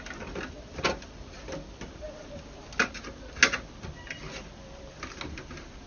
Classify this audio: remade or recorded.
recorded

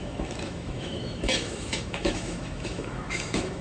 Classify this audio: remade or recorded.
remade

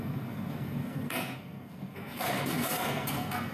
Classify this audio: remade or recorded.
remade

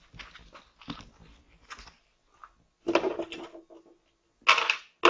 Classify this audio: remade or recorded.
recorded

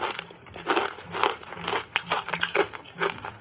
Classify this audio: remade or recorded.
recorded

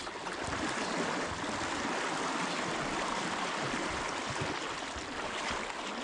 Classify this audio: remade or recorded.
recorded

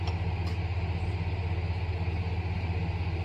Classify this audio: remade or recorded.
recorded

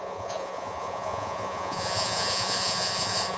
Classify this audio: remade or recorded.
remade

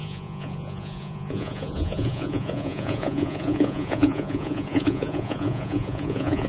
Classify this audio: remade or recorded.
remade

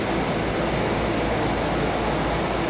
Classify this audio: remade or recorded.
recorded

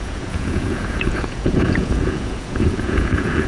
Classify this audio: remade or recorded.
remade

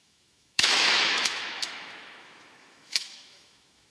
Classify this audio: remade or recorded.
remade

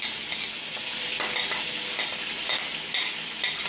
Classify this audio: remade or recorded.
recorded